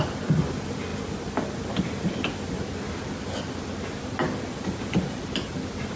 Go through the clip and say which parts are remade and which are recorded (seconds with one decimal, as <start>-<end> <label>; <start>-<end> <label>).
0.0-6.0 recorded